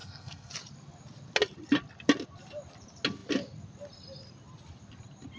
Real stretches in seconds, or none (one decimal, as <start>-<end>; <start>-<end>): 0.5-5.4